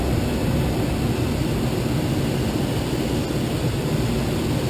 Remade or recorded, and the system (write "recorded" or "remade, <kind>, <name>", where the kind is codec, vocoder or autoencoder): recorded